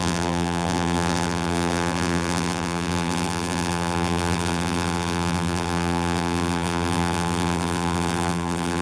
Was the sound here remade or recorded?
remade